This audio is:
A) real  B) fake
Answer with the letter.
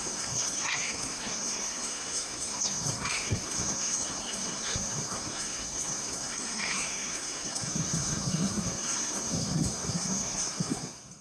B